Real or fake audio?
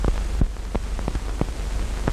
real